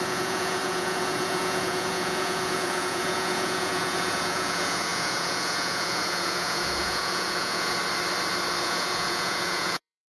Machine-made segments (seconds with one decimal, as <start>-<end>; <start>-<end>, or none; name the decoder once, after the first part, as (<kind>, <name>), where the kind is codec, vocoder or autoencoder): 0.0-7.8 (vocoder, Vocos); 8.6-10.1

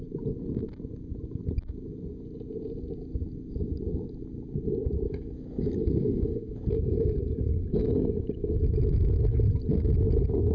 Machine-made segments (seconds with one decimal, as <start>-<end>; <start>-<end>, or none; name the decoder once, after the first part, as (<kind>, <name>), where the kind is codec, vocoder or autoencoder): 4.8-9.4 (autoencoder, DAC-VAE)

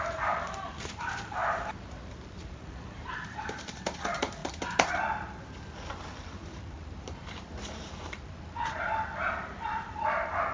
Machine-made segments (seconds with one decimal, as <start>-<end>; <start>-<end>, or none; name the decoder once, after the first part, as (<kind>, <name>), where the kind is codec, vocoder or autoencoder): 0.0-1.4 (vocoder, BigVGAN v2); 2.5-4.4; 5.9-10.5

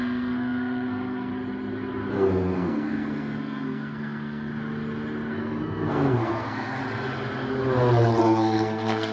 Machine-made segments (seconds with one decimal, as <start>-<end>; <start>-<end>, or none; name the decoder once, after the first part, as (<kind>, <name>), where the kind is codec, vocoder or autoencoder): 0.0-1.3 (codec, SNAC); 2.1-4.5; 5.3-6.8; 8.2-9.1

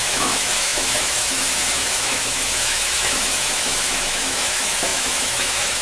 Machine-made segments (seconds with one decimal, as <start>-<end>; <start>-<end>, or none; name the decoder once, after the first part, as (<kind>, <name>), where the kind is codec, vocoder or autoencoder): 0.0-5.8 (autoencoder, DAC-VAE)